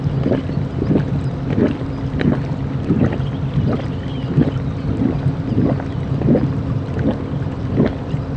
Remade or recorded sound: recorded